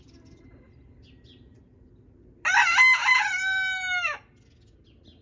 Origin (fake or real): real